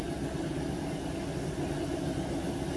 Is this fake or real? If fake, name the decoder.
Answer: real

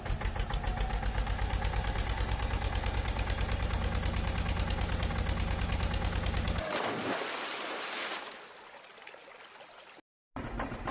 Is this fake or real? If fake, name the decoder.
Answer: real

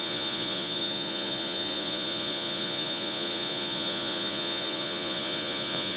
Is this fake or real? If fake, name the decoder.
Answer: fake, vocoder, Vocos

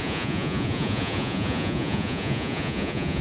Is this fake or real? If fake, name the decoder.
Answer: fake, vocoder, Vocos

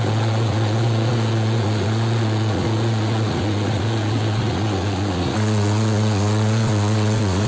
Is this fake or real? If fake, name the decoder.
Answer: fake, vocoder, Vocos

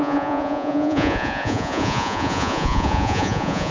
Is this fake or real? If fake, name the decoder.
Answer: fake, vocoder, Vocos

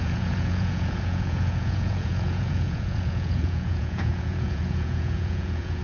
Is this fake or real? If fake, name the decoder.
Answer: fake, vocoder, Vocos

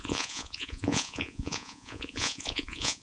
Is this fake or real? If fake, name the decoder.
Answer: fake, vocoder, Vocos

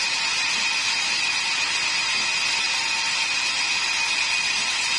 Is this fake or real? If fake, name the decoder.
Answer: real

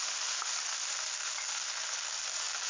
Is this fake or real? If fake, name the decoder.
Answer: real